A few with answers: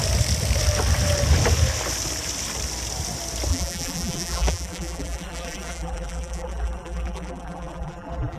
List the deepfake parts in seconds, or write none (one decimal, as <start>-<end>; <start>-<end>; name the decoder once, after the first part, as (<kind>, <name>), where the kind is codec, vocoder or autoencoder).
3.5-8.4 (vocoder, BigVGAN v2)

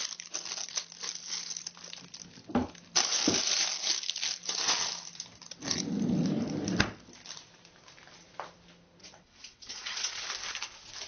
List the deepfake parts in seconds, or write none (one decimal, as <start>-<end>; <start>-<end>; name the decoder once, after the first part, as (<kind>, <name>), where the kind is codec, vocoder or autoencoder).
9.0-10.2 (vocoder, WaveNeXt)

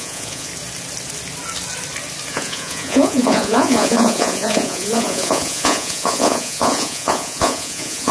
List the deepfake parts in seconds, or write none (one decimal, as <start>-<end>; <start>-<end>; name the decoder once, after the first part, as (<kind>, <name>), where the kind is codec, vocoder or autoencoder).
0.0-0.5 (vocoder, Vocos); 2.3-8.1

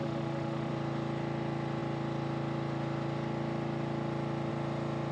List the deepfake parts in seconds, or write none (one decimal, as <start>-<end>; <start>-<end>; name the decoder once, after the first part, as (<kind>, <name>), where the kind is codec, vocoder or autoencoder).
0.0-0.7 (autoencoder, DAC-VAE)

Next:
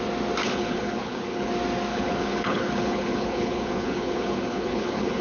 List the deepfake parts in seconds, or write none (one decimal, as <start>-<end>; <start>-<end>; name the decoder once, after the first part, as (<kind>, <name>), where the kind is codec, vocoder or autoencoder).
0.4-1.5 (codec, HILCodec); 1.9-5.2

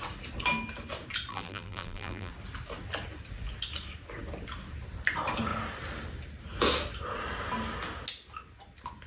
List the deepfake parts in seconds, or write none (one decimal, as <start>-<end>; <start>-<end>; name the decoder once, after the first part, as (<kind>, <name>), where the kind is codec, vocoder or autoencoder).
1.3-2.3 (vocoder, BigVGAN v2)

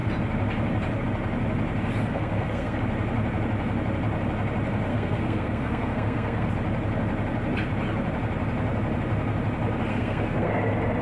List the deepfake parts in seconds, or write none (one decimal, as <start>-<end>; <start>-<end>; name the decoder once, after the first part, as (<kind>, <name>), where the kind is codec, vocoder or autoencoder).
2.0-2.8 (codec, SNAC); 4.9-6.5; 9.9-10.5

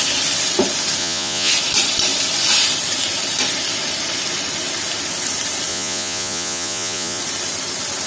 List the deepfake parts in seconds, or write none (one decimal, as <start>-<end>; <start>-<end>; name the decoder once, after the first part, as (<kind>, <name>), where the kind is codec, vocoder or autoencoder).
1.0-1.5 (vocoder, Vocos); 5.7-7.2